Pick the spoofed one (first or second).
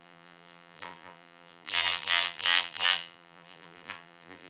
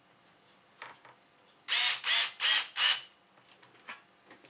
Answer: first